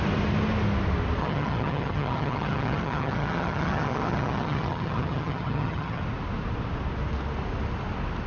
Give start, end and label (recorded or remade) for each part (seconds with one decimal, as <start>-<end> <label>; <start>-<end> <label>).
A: 0.0-1.2 recorded; 1.2-6.0 remade; 6.0-8.3 recorded